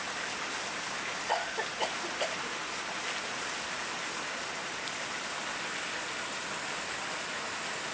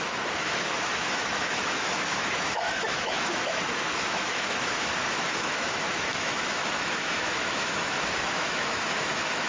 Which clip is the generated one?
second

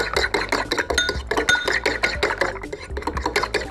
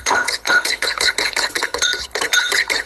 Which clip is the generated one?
second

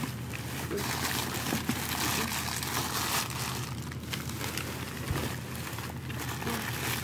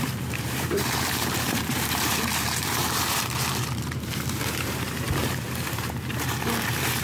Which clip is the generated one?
second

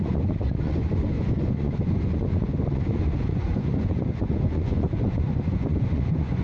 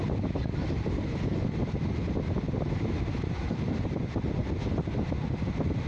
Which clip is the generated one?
first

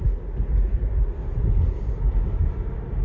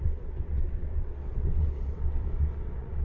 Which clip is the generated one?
second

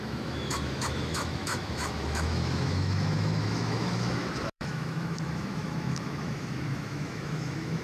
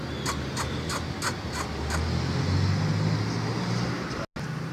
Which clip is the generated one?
first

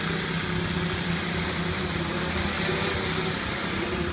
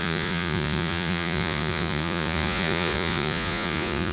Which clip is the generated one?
second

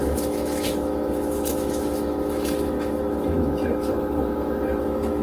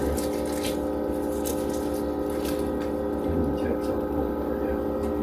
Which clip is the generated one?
first